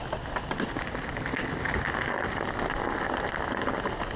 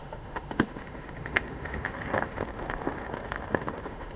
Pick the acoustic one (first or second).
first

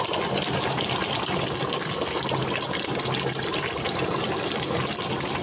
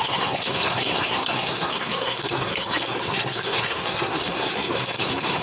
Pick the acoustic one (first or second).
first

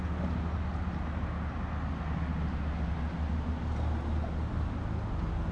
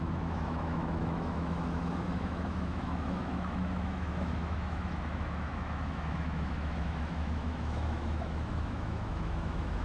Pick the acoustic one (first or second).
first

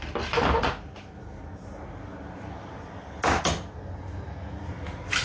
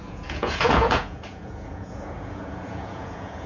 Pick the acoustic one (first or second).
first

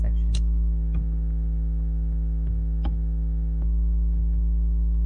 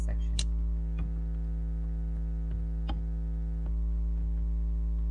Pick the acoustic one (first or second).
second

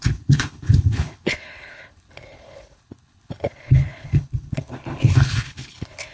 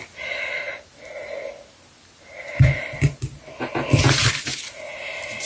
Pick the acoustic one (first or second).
second